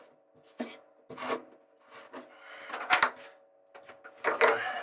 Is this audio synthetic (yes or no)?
no